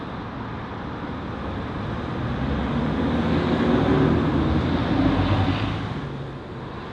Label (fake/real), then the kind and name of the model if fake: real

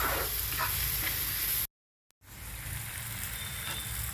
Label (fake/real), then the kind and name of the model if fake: real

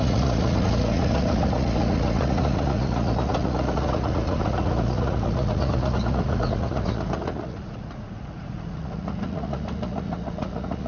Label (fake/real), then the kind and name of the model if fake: fake, vocoder, Vocos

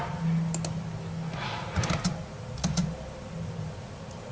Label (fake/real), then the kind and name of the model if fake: real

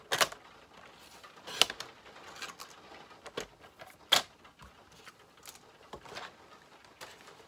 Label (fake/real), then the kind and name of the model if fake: real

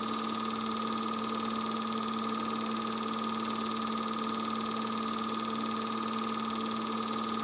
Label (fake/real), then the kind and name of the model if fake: real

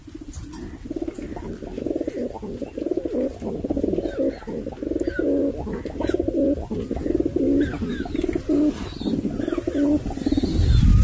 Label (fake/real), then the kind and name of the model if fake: real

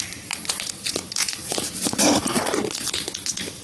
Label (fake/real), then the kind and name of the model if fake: fake, vocoder, Vocos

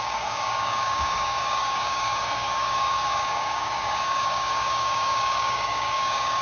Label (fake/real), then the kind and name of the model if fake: fake, codec, DAC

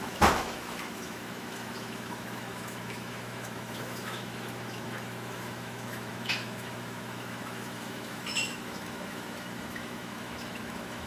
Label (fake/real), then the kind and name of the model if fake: fake, autoencoder, DAC-VAE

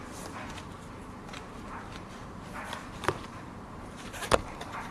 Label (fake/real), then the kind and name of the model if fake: fake, vocoder, BigVGAN v2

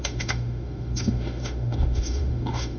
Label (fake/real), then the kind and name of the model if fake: fake, autoencoder, DAC-VAE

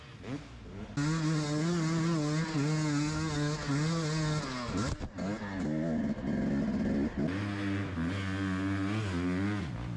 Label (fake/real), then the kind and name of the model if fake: real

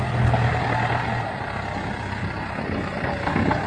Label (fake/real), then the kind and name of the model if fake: real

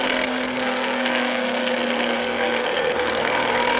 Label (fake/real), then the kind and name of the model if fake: fake, codec, SNAC